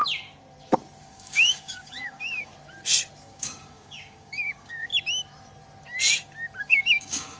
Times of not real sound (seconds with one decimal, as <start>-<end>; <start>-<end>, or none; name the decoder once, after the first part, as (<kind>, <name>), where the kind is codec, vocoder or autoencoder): 1.0-2.5 (codec, DAC); 3.2-4.9; 6.6-7.4